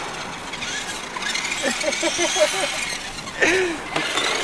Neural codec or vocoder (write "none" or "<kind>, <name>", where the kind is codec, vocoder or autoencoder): none